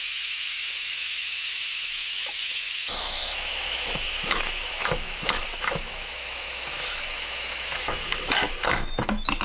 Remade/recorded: remade